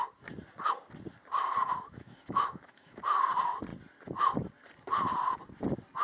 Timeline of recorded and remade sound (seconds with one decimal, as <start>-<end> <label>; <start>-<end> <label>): 0.0-1.6 recorded; 1.6-3.0 remade; 3.0-6.0 recorded